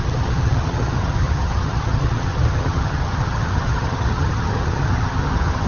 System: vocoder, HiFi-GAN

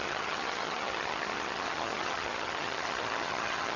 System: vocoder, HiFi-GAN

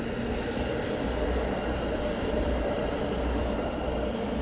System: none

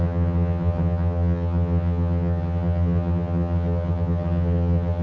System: vocoder, HiFi-GAN